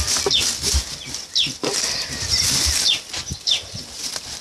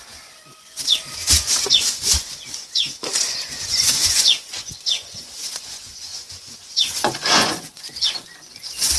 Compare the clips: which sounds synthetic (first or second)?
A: second